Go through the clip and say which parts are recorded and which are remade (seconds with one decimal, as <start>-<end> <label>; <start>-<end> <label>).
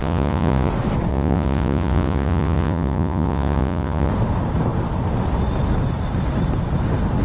0.0-0.7 remade; 0.7-1.1 recorded; 1.1-4.1 remade; 4.1-7.2 recorded